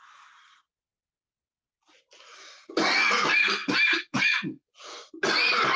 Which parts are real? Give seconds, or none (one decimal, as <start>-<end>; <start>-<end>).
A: 0.0-5.8